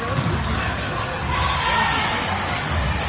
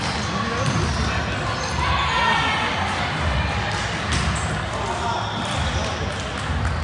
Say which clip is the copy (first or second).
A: first